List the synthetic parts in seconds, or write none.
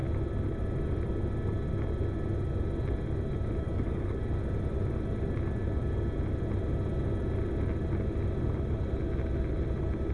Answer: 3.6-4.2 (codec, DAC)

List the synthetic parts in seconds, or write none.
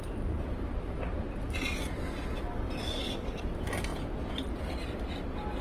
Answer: 2.8-3.4 (codec, DAC)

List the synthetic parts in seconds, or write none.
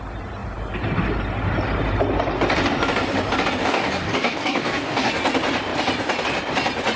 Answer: 3.6-5.1 (codec, DAC)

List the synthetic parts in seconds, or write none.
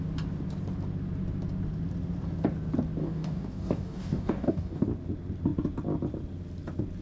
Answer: 3.0-4.8 (codec, DAC)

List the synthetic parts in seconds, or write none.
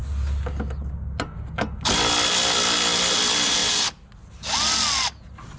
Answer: none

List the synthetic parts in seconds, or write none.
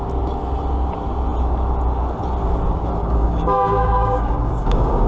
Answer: 3.0-5.1 (codec, DAC)